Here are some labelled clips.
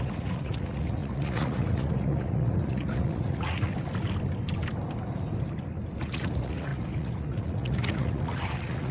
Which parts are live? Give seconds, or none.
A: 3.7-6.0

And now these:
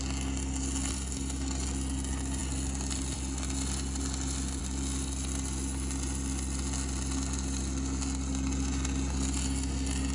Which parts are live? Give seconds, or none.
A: 0.0-10.1

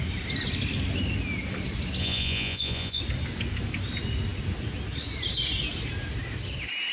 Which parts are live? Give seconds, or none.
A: 0.0-2.0; 3.0-6.9

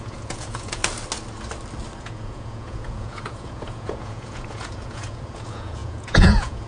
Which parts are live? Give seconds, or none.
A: 0.8-2.0